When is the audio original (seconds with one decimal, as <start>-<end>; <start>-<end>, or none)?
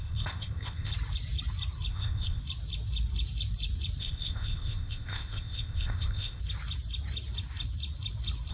0.9-1.9; 2.4-4.0; 6.4-8.5